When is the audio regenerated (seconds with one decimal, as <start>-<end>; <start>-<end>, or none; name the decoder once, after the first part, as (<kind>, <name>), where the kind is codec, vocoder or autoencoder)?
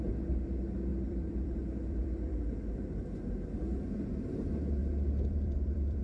0.9-2.5 (vocoder, BigVGAN v2); 4.8-6.0